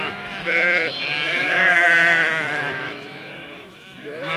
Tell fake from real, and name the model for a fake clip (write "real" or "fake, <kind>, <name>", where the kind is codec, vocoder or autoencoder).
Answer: fake, autoencoder, DAC-VAE